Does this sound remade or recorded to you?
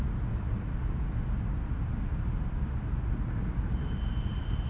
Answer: recorded